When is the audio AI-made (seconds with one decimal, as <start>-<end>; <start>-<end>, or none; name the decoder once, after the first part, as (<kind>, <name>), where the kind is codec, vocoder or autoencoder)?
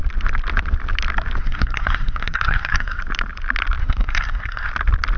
1.4-3.0 (codec, SNAC); 3.8-4.7